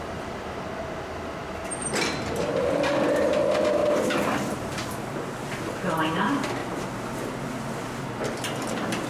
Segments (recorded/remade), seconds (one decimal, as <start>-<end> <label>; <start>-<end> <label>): 0.0-9.1 recorded